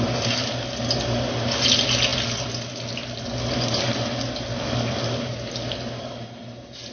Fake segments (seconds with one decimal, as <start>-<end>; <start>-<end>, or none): none